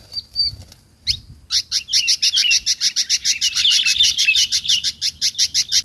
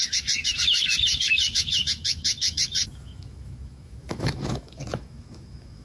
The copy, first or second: second